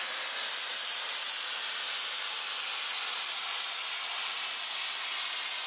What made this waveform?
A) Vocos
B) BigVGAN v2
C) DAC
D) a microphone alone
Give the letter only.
D